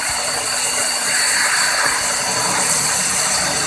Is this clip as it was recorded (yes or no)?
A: yes